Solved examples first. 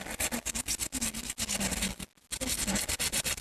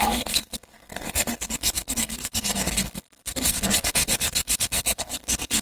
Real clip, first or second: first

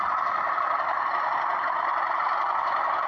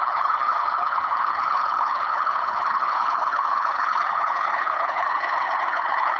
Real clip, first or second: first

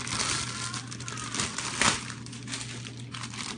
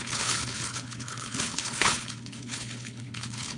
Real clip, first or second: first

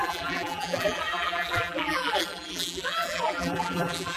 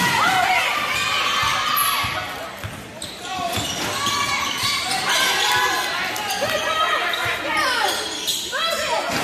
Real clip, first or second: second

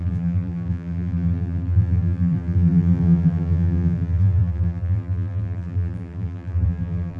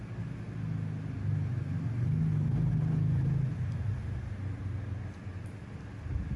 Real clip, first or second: second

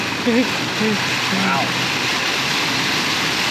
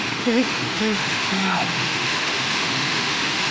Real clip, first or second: first